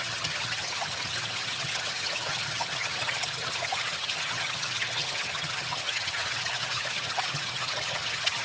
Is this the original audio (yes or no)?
no